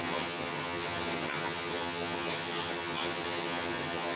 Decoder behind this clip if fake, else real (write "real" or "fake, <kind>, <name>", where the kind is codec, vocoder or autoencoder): fake, vocoder, HiFi-GAN